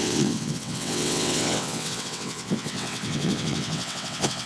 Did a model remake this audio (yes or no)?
yes